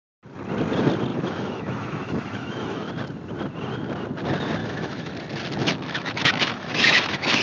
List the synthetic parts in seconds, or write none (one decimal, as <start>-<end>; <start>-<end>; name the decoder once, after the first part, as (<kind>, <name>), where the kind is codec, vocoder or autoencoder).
1.1-2.9 (autoencoder, DAC-VAE); 4.6-5.1; 5.6-7.4